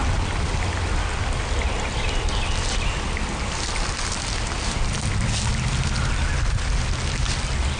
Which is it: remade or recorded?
recorded